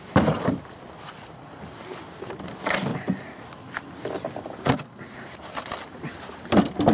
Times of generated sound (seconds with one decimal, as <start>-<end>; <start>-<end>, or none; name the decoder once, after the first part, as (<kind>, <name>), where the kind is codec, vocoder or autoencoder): 0.0-2.9 (vocoder, BigVGAN v2); 6.1-6.9